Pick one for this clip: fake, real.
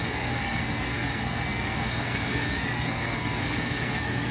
fake